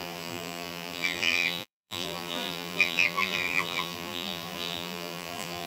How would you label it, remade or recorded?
remade